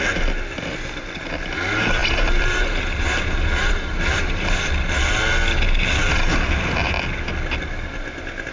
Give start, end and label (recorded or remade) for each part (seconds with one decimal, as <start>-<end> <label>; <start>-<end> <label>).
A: 0.0-2.0 recorded; 2.0-4.7 remade; 4.7-8.5 recorded